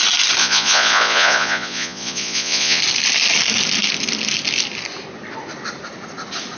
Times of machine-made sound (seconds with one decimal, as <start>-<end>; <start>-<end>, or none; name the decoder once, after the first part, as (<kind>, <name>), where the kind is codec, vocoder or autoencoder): 0.4-2.8 (vocoder, Vocos)